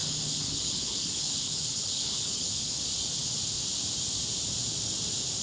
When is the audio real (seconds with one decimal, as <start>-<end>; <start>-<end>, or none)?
2.8-5.4